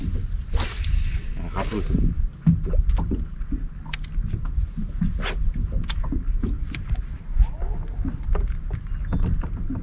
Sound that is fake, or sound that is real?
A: real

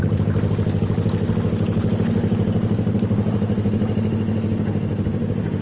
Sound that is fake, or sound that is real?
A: real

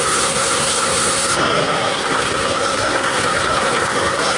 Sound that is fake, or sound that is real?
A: fake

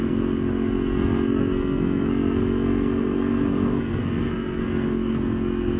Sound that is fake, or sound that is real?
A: fake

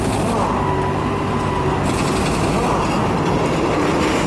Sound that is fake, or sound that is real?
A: real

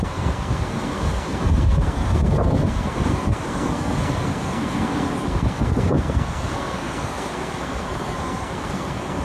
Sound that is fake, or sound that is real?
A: fake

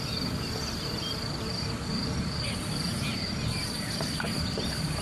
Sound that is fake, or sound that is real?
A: real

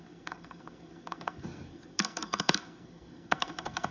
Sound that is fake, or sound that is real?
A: fake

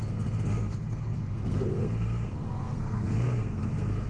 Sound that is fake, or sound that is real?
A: fake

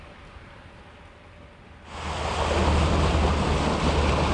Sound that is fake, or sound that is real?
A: real